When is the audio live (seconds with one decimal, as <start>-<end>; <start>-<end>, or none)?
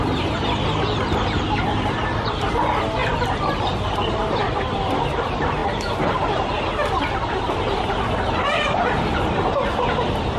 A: 0.0-10.4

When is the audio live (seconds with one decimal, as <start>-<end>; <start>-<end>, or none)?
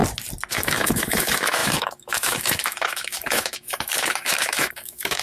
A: 0.0-0.5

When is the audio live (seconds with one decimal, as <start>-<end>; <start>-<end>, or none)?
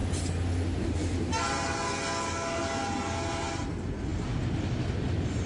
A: 0.0-5.5